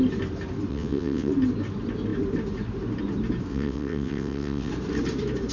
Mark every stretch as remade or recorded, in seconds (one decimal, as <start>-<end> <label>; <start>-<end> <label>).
0.0-0.7 recorded; 0.7-1.3 remade; 1.3-3.5 recorded; 3.5-4.7 remade; 4.7-5.5 recorded